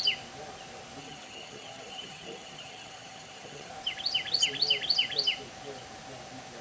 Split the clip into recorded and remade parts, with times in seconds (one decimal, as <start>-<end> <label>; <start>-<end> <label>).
0.0-1.0 recorded; 1.0-3.7 remade; 3.7-6.6 recorded